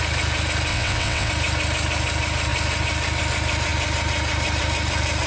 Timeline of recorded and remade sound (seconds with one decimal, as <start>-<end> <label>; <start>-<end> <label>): 0.0-0.7 recorded; 0.7-1.3 remade; 1.3-5.3 recorded